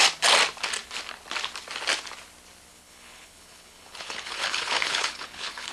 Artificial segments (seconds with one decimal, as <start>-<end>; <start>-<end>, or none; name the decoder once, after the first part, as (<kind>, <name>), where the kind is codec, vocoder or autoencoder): 2.7-5.7 (codec, HILCodec)